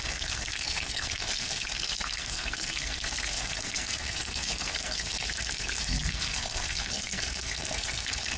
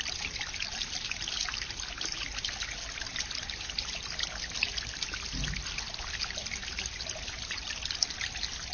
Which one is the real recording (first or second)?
second